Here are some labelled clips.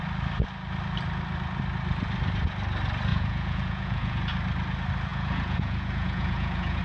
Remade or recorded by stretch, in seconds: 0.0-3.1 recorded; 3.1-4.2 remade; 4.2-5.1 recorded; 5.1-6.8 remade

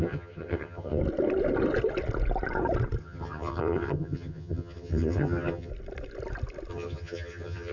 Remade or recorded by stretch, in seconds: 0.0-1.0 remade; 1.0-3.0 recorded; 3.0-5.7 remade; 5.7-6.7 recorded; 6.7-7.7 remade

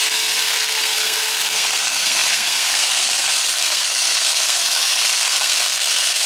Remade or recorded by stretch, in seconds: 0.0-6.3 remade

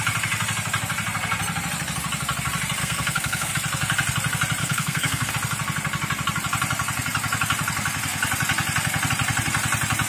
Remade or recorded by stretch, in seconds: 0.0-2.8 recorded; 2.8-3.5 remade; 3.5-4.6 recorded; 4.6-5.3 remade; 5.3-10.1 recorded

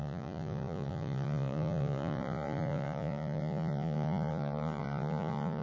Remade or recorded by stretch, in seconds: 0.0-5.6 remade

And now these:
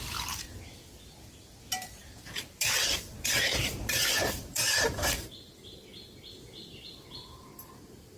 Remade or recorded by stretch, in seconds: 0.0-2.0 recorded; 2.0-5.9 remade; 5.9-8.2 recorded

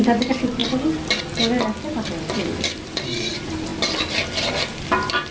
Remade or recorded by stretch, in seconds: 0.0-5.3 recorded